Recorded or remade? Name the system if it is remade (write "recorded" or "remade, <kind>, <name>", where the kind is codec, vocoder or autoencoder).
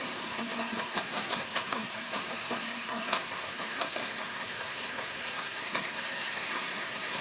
remade, codec, SNAC